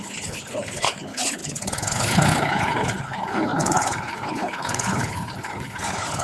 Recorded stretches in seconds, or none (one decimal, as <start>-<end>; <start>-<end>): none